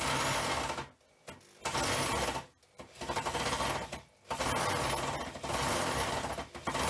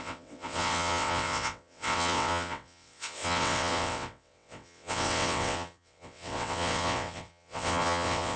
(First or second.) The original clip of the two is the first